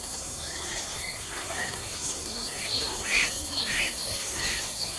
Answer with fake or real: fake